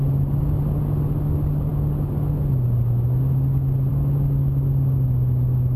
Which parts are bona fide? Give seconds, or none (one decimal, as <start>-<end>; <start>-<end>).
0.0-5.8